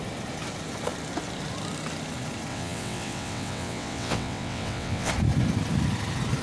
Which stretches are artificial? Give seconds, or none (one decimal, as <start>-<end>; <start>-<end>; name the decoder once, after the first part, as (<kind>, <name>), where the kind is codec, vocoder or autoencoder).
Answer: 2.5-5.1 (vocoder, WaveNeXt)